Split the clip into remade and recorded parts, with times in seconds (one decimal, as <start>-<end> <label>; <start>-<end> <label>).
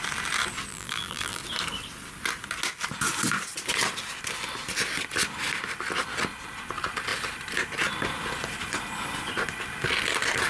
0.0-0.7 recorded; 0.7-1.4 remade; 1.4-10.5 recorded